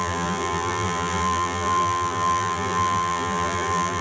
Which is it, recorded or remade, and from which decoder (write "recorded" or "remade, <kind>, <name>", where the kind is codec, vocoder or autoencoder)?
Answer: remade, vocoder, BigVGAN v2